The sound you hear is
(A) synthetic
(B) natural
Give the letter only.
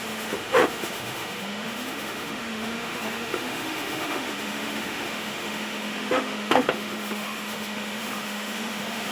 A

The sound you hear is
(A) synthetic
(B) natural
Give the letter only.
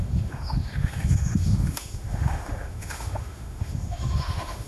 A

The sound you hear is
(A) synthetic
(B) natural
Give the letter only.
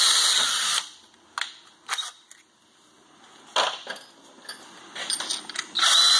B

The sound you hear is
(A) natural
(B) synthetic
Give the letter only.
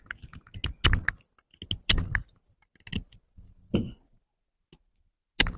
A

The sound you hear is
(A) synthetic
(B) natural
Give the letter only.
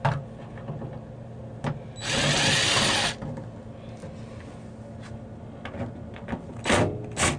B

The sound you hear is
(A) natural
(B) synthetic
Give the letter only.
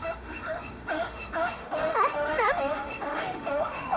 B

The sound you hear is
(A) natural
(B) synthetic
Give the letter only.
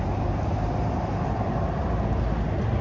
A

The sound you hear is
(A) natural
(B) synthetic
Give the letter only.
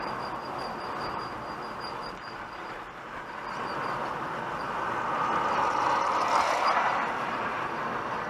A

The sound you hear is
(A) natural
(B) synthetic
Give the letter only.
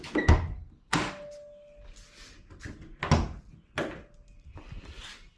A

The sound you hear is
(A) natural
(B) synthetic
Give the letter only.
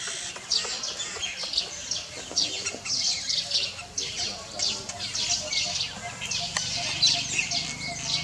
A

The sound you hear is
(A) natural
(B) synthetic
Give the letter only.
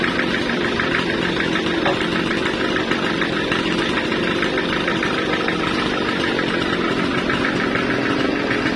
A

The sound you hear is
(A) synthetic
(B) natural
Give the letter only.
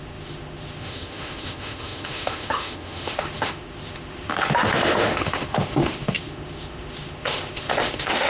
A